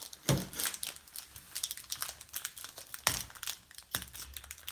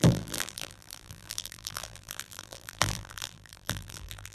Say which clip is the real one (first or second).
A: first